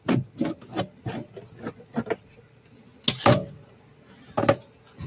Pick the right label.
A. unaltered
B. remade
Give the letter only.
A